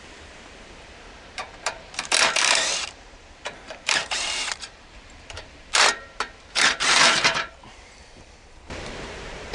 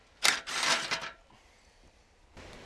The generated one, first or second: first